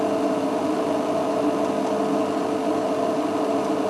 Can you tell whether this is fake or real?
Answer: real